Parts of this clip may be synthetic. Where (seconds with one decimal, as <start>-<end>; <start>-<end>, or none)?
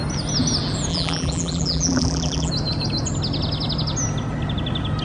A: 0.9-2.5